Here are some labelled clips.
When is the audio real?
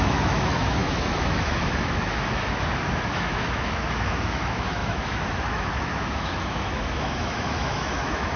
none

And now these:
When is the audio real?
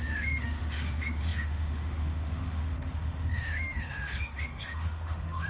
none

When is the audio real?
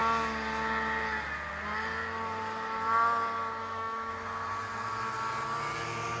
0.0-3.6; 4.1-6.2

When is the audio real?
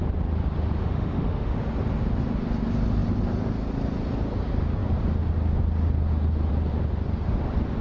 0.0-0.8; 1.6-7.8